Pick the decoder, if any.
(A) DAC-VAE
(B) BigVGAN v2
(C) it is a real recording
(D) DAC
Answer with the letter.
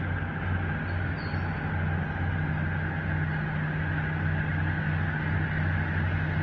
C